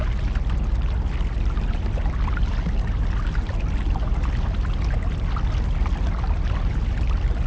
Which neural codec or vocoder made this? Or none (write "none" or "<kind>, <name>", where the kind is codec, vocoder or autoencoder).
none